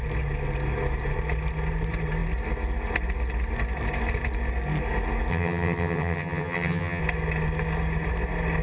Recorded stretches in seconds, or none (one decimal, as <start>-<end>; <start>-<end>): 0.0-5.3; 7.0-8.6